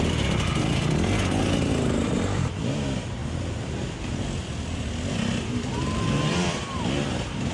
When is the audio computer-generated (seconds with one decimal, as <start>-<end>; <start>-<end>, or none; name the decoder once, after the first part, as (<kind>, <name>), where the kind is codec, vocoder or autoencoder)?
none